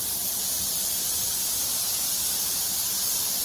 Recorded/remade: remade